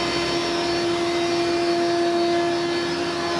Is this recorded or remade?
recorded